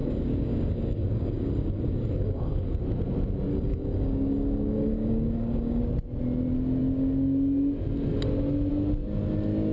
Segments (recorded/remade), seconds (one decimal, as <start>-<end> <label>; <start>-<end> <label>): 0.0-2.8 remade; 2.8-3.5 recorded; 3.5-5.8 remade; 5.8-9.7 recorded